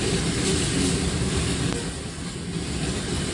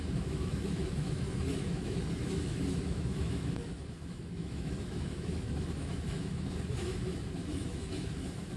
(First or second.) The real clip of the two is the first